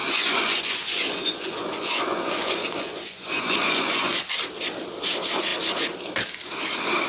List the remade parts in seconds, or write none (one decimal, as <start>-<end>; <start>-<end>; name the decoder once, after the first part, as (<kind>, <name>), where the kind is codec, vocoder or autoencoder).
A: 0.0-4.3 (vocoder, Vocos)